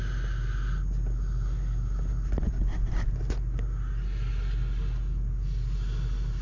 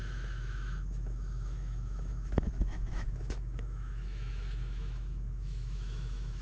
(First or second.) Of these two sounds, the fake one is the second